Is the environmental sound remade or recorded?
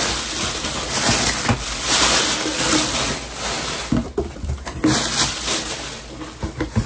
recorded